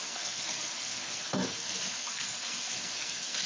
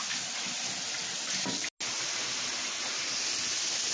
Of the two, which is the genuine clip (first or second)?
second